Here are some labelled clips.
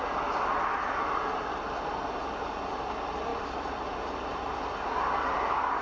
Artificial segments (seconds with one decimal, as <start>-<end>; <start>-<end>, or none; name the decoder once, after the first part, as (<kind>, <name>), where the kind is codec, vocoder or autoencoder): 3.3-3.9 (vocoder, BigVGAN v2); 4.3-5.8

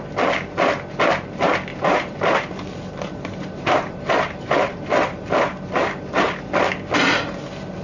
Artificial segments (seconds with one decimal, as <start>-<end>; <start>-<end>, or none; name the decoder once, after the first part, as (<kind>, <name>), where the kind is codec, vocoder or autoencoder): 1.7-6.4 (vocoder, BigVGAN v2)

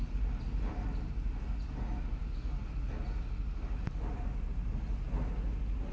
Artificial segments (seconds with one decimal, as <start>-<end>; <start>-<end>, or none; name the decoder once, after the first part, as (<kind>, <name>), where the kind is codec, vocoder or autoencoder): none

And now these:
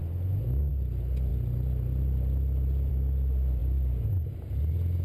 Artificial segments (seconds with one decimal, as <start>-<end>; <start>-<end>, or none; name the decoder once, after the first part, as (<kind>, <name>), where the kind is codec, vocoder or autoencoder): 3.6-4.5 (vocoder, BigVGAN v2)

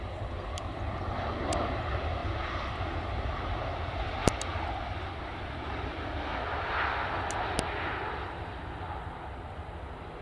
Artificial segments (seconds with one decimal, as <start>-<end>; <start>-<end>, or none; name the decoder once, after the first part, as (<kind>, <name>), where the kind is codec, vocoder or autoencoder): 4.2-5.8 (vocoder, BigVGAN v2)

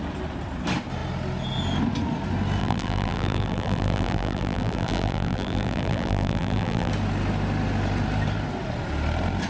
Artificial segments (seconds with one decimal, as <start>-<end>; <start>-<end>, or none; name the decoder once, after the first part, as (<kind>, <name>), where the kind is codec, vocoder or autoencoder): 2.6-6.9 (vocoder, BigVGAN v2)